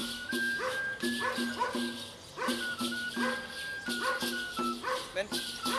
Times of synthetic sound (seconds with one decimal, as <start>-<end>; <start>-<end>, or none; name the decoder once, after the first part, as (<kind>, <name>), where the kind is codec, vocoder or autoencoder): 0.0-0.8 (autoencoder, DAC-VAE)